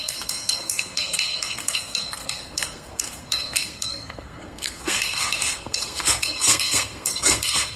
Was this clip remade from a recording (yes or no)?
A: yes